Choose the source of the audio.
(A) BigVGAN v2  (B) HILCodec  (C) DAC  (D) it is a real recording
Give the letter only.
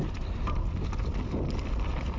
D